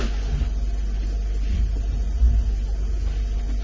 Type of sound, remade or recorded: recorded